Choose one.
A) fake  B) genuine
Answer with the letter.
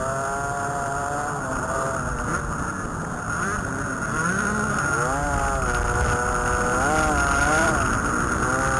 B